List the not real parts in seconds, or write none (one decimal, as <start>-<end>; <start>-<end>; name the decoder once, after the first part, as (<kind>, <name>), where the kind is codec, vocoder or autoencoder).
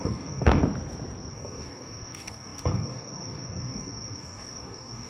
0.0-0.6 (codec, DAC); 1.3-5.1